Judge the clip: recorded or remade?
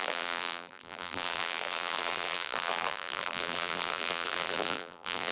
remade